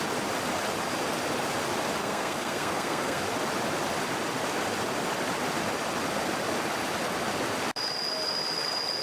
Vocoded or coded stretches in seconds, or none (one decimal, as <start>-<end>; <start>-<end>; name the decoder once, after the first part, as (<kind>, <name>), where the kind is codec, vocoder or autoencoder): 2.0-3.2 (codec, SNAC)